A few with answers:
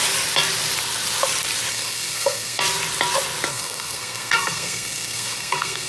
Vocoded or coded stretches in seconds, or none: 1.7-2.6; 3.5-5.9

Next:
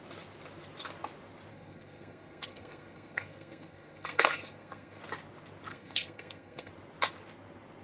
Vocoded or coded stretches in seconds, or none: 1.5-5.0; 5.7-6.7

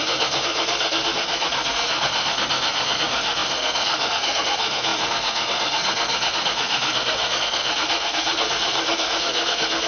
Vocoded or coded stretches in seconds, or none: 0.0-9.9

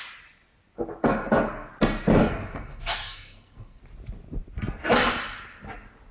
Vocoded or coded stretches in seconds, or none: 1.0-1.7; 2.2-3.8

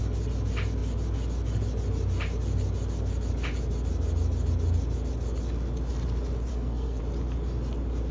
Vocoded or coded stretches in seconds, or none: 6.5-7.0

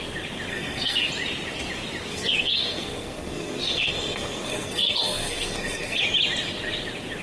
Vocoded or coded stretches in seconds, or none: 0.5-1.1; 2.1-6.0